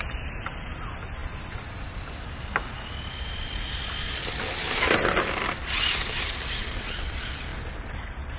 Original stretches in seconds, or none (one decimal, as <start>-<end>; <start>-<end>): 0.0-8.4